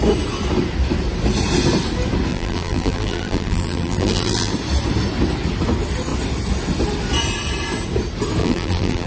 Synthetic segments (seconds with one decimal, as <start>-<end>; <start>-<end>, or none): 2.3-4.5; 8.4-9.1